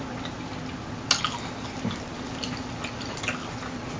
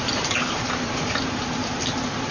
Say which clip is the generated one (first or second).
second